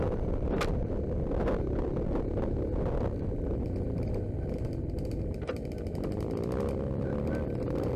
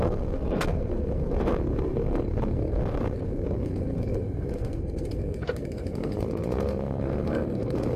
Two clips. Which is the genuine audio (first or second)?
first